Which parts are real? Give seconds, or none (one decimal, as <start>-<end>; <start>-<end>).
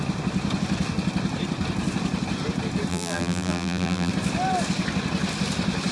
0.0-2.9; 4.1-5.9